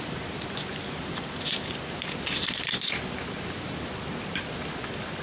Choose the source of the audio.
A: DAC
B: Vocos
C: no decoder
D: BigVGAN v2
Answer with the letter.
D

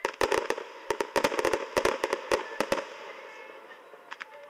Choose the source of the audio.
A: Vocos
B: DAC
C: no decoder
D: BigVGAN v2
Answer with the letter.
C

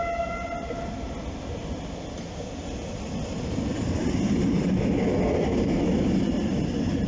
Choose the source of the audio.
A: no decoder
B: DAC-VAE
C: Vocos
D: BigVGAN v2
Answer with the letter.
A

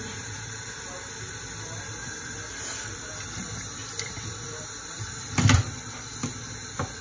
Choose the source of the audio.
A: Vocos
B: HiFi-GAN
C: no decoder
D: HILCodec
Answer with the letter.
C